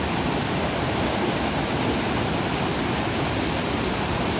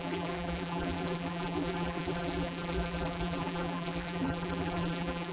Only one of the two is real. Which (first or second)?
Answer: first